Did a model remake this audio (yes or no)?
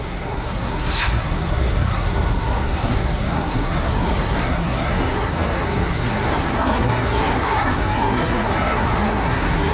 yes